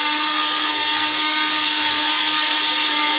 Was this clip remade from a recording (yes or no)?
yes